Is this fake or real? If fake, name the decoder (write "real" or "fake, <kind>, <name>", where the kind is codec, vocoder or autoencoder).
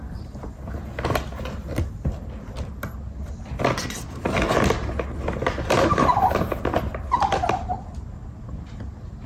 real